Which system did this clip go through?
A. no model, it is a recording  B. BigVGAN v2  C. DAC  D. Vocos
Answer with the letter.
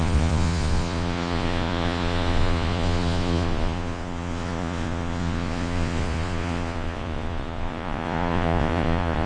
D